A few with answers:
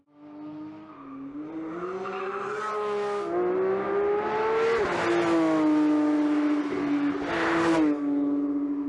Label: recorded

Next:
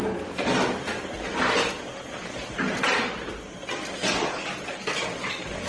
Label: recorded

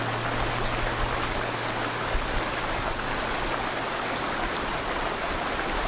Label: recorded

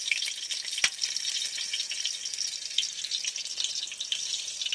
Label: recorded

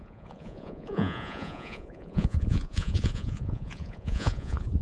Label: remade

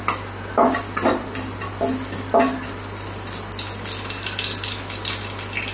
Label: recorded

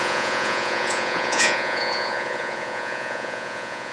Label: remade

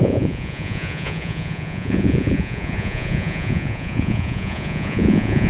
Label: remade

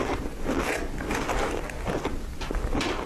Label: recorded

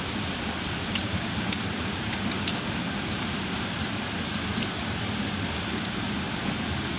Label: recorded